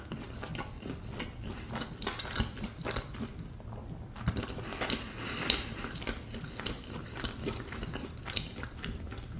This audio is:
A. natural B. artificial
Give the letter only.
A